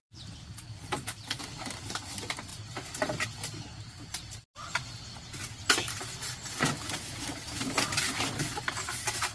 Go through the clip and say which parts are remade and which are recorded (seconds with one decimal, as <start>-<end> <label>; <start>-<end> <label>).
0.0-9.3 recorded